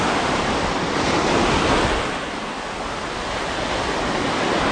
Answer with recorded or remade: recorded